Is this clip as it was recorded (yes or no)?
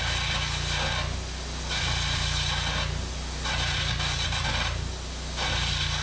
yes